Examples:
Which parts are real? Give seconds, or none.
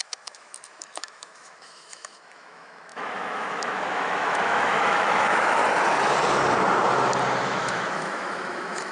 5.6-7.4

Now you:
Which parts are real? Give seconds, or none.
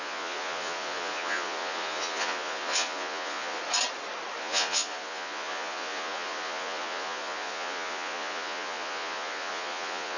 3.6-4.4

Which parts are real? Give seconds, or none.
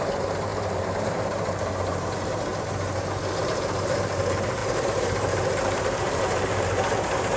2.5-3.4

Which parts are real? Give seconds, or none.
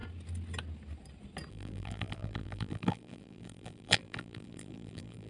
0.0-1.5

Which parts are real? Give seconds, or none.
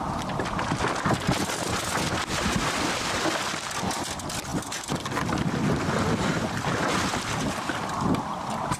0.0-8.8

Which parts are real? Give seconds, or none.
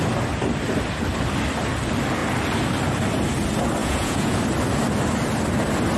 0.0-3.8; 4.4-6.0